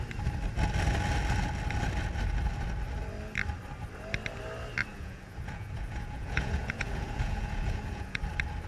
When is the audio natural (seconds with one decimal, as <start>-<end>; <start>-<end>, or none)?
0.0-4.9; 8.2-8.7